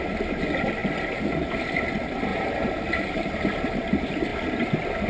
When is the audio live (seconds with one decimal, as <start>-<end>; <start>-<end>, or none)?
0.0-2.3; 3.8-5.1